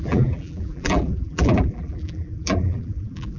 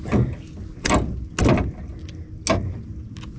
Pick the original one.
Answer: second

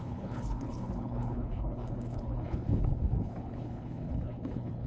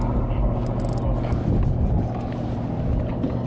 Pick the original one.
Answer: second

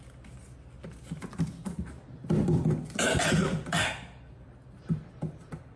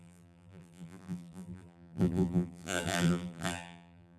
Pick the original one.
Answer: first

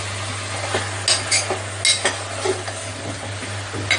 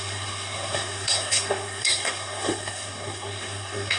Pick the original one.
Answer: first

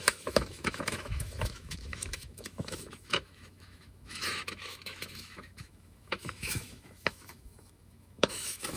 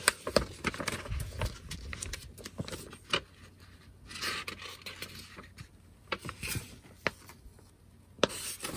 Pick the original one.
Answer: second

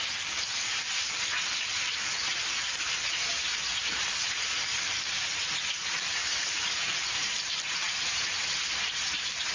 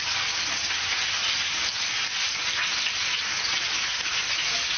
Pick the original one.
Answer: second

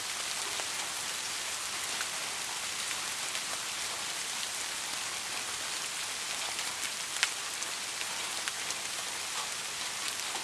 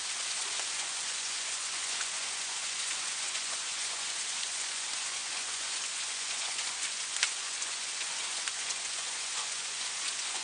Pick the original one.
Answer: first